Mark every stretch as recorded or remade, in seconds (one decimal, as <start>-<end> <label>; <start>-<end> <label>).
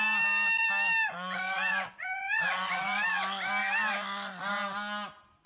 0.0-1.1 recorded; 1.1-3.2 remade; 3.2-5.5 recorded